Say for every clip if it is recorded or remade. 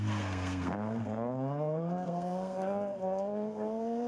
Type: remade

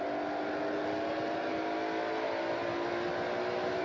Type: recorded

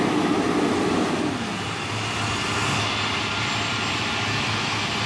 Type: recorded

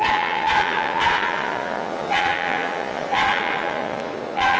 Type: remade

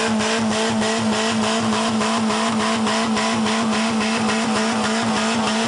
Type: recorded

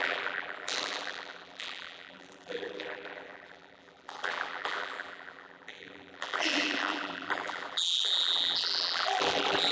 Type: remade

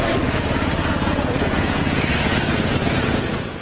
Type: remade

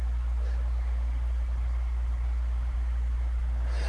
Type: recorded